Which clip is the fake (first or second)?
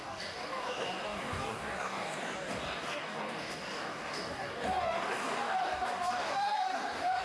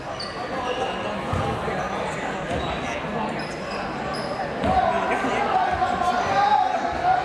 first